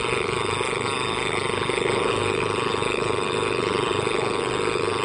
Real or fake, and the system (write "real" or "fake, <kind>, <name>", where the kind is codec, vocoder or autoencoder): real